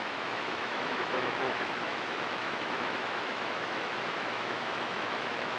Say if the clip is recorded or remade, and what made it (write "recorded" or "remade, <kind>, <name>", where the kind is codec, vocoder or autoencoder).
remade, autoencoder, DAC-VAE